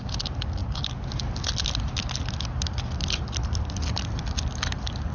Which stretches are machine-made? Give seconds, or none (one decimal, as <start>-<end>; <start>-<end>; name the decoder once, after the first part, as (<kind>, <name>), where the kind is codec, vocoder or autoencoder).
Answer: none

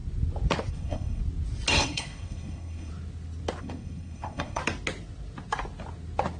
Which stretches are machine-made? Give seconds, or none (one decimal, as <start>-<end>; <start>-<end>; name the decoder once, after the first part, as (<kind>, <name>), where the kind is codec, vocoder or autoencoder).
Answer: 0.7-1.2 (codec, SNAC); 1.7-2.9; 3.6-4.6

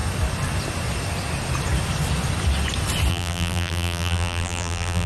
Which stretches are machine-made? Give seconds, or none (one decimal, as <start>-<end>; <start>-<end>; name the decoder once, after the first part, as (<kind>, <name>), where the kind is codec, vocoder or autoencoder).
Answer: 3.1-5.1 (vocoder, BigVGAN v2)

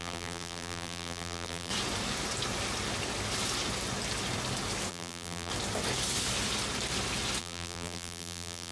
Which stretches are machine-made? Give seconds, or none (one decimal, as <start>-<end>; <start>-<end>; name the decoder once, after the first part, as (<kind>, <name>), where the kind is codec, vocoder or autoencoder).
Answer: 0.0-1.7 (vocoder, BigVGAN v2); 4.9-5.5; 7.4-8.7

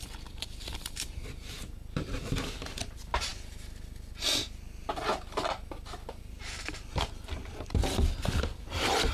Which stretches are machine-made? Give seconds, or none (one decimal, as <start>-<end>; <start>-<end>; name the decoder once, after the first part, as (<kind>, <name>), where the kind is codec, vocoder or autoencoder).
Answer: 0.0-5.1 (vocoder, BigVGAN v2); 6.2-9.1

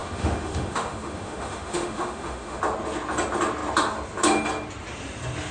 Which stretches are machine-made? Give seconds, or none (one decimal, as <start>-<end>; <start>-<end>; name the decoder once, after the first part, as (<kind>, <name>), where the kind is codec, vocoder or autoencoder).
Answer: 0.0-2.6 (autoencoder, DAC-VAE)